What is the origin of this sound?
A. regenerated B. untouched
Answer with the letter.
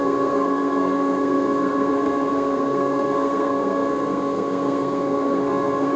A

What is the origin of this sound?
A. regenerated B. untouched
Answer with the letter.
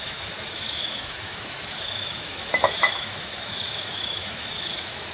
A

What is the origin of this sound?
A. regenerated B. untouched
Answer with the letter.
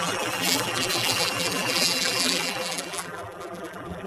A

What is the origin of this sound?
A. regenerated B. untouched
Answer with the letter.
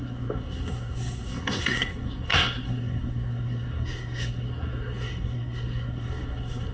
A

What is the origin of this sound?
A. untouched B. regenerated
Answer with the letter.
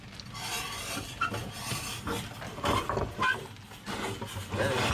A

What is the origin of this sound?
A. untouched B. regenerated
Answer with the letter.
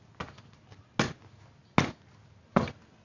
A